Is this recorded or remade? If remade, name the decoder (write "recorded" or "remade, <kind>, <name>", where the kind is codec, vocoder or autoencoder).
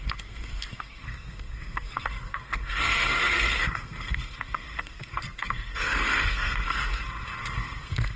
remade, codec, SNAC